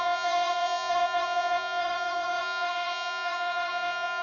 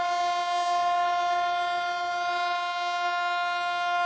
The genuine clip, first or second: second